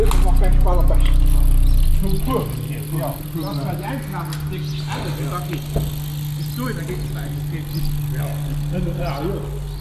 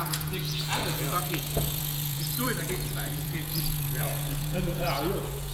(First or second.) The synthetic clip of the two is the second